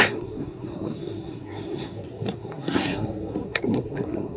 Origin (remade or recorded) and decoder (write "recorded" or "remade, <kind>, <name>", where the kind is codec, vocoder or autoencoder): remade, codec, SNAC